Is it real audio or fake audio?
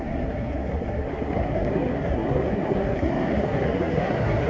fake